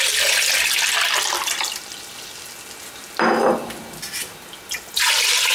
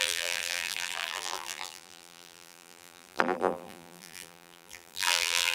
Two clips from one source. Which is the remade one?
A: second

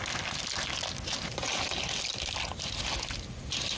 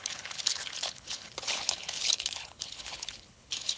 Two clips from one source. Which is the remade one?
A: second